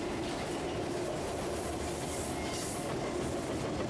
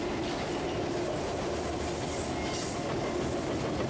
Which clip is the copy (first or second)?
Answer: first